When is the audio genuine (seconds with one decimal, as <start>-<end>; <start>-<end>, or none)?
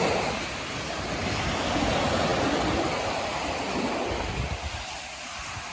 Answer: 0.0-5.7